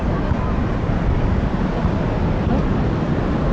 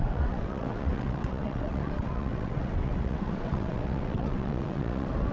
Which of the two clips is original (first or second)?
first